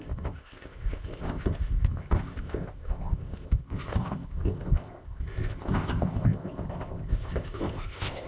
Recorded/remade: remade